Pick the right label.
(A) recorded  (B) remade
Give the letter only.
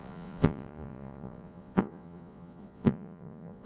B